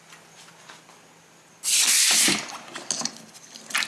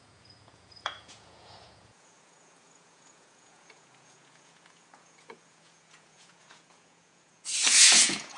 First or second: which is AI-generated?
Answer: second